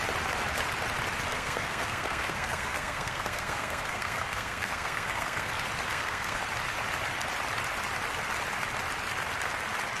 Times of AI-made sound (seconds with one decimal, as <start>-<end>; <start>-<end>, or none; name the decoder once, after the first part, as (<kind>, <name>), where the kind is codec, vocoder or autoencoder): 1.3-5.5 (codec, SNAC); 5.9-6.4